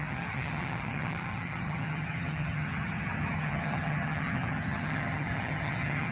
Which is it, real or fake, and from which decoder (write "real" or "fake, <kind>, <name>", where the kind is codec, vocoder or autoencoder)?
fake, vocoder, HiFi-GAN